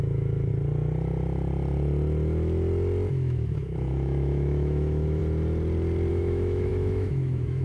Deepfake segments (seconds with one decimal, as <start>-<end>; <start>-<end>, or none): 0.0-0.5; 3.1-5.2; 6.1-7.6